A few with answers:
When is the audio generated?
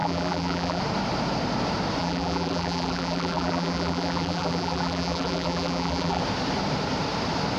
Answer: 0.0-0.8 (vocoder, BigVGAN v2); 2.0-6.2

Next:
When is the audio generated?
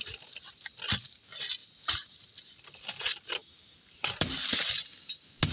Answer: 1.6-2.2 (vocoder, BigVGAN v2); 3.4-4.5